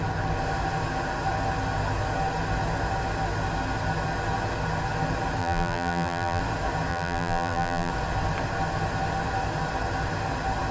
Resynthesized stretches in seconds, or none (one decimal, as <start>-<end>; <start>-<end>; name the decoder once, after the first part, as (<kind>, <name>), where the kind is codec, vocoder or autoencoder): 5.4-6.4 (vocoder, BigVGAN v2); 6.9-7.9